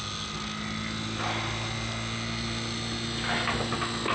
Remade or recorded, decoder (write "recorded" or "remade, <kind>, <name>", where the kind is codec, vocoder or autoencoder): recorded